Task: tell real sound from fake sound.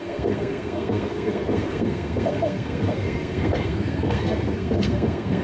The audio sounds fake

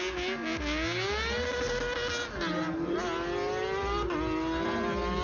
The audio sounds real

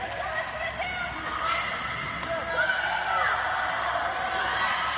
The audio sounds real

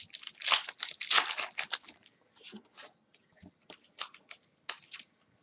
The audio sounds real